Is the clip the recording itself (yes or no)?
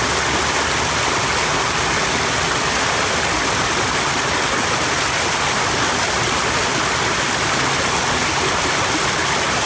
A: yes